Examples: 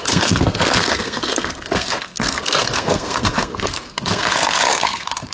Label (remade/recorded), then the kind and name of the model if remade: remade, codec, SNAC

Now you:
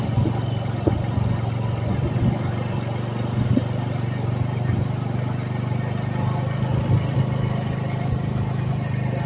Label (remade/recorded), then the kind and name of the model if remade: recorded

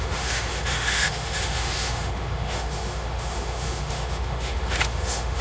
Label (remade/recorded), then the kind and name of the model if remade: remade, autoencoder, DAC-VAE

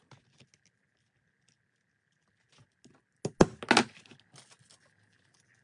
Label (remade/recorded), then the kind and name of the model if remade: recorded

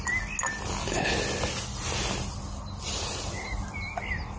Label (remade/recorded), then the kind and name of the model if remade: recorded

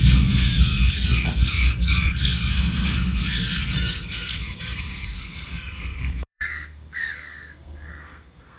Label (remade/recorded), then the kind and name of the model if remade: remade, codec, SNAC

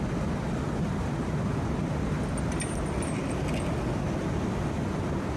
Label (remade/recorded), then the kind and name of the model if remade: recorded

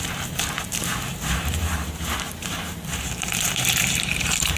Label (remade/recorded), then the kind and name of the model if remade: remade, vocoder, BigVGAN v2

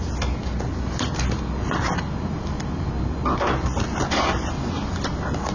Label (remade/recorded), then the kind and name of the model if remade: recorded